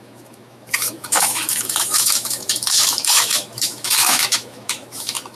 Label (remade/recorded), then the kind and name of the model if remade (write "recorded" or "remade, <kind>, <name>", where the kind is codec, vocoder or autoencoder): remade, autoencoder, DAC-VAE